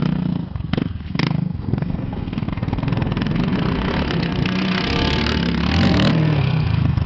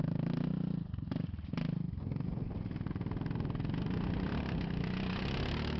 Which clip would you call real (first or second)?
second